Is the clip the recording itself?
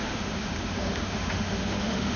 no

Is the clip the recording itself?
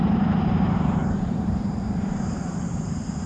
no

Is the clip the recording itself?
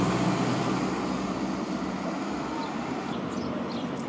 yes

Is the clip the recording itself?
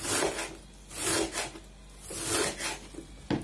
yes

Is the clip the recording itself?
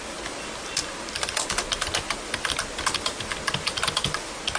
yes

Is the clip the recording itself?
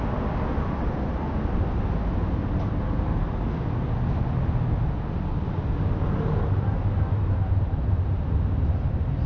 yes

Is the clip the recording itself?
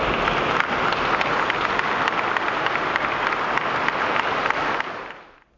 yes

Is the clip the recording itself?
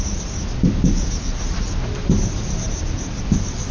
yes